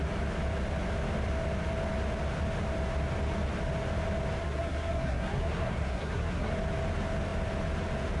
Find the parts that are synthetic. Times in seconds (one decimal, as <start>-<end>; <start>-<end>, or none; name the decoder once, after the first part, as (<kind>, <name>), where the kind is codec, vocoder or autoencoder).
4.4-6.5 (codec, SNAC)